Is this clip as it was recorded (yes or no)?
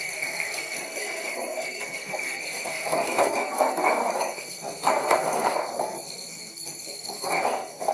no